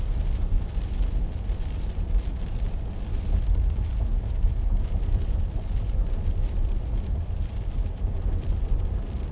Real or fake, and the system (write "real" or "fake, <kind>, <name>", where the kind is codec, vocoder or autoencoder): fake, vocoder, BigVGAN v2